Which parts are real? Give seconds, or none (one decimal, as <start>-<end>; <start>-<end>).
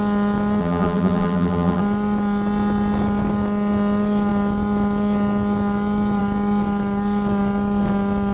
0.0-0.6; 1.8-8.3